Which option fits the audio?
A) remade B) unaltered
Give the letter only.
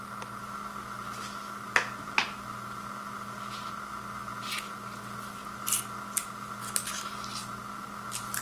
B